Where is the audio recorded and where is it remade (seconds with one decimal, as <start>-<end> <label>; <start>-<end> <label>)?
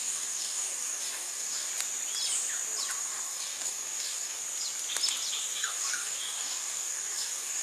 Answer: 0.0-1.7 remade; 1.7-3.0 recorded; 3.0-4.4 remade; 4.4-5.4 recorded; 5.4-7.6 remade